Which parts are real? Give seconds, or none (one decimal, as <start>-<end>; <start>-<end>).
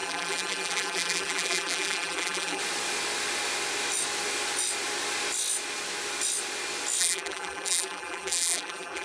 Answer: 2.6-7.0